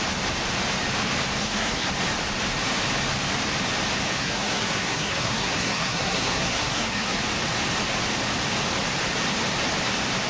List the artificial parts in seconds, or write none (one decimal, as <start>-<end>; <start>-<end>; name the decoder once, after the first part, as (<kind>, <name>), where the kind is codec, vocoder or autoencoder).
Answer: 1.4-1.9 (codec, SNAC); 4.2-7.2